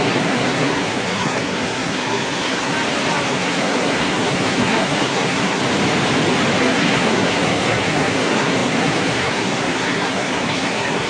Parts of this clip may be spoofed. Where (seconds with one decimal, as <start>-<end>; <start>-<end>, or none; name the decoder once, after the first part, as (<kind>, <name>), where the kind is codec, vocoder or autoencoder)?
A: 0.0-2.7 (codec, SNAC); 3.3-5.6; 6.6-11.1